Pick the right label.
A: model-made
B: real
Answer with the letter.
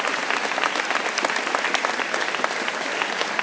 B